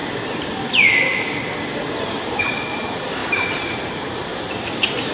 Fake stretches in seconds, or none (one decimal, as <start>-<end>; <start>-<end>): 0.6-1.1; 1.6-4.3